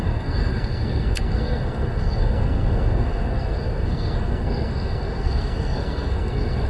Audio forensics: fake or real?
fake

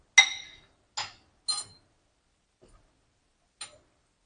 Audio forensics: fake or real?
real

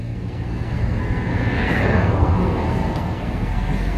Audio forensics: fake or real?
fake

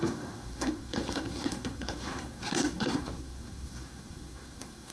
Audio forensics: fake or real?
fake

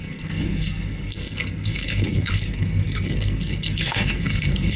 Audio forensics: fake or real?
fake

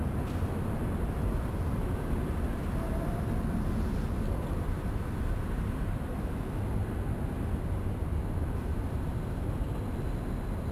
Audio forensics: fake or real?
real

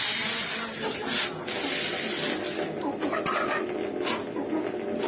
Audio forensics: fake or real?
real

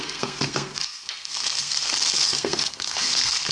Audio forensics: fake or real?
fake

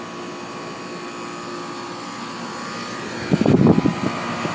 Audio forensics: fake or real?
real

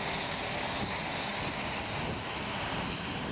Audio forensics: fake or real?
real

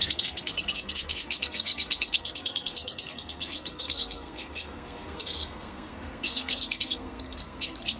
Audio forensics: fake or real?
fake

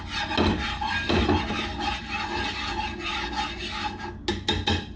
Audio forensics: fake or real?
real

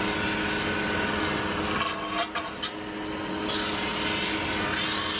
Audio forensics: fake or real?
real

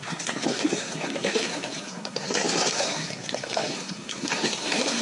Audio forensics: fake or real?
fake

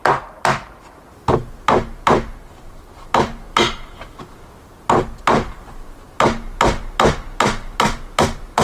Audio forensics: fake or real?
real